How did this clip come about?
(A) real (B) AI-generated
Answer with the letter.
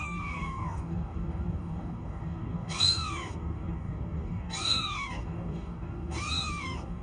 B